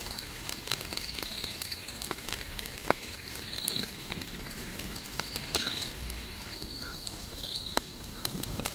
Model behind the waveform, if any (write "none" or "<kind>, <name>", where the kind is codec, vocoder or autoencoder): codec, DAC